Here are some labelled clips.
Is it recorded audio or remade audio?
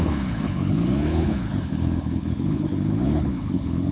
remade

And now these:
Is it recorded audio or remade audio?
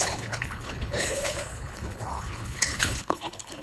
remade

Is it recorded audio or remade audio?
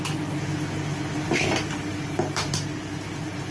recorded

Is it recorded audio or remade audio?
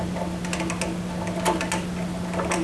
recorded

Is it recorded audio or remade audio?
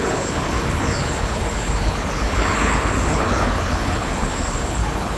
remade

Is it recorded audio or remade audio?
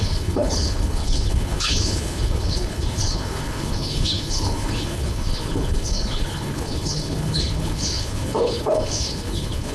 remade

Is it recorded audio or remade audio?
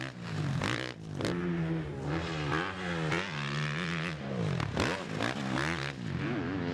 recorded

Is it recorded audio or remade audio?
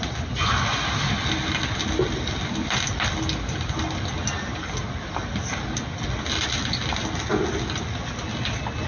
recorded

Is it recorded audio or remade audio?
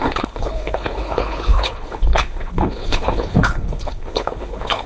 remade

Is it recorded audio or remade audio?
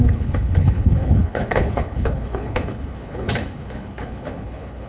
remade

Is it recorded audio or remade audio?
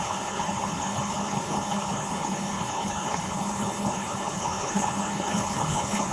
remade